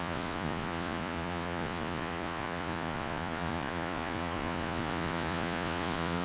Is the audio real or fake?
fake